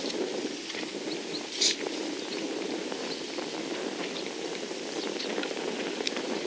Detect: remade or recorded recorded